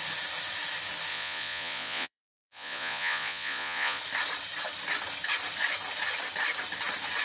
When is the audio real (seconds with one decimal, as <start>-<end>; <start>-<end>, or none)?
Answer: 0.0-1.1; 4.0-7.2